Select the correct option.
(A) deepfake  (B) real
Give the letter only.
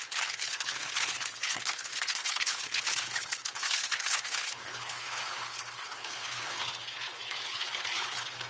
A